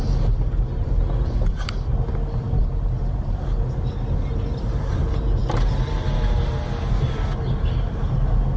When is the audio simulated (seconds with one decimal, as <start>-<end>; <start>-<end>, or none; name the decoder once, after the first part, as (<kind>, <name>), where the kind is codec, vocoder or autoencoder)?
none